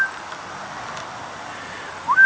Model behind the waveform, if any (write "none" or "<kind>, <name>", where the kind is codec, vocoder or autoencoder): none